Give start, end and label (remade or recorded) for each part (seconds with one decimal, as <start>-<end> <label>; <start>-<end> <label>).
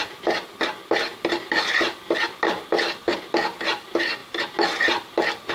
0.0-5.5 recorded